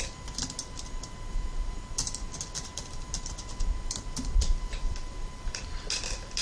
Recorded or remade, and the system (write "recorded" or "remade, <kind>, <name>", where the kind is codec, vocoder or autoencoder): remade, vocoder, BigVGAN v2